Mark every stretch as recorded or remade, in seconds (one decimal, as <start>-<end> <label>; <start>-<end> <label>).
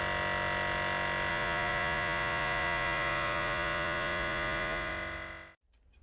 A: 0.0-1.3 recorded; 1.3-4.9 remade; 4.9-6.0 recorded